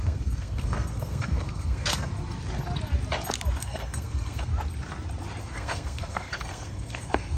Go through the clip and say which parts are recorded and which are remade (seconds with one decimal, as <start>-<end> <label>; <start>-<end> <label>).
0.0-2.1 remade; 2.1-3.6 recorded; 3.6-4.5 remade; 4.5-5.4 recorded; 5.4-7.4 remade